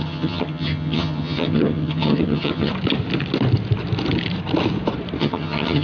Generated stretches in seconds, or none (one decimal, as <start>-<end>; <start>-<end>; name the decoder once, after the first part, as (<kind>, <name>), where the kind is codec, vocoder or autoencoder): 0.0-2.7 (vocoder, HiFi-GAN); 5.2-5.8